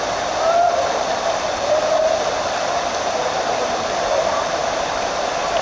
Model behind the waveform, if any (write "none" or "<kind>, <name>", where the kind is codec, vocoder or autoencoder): vocoder, BigVGAN v2